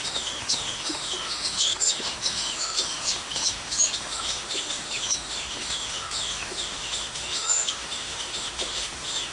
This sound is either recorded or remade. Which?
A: remade